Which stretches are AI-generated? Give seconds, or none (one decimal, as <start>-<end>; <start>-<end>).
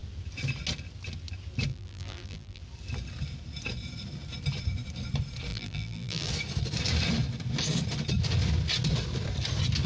1.7-2.6; 5.5-6.3